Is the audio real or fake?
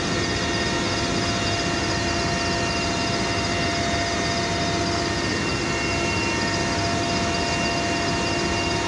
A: real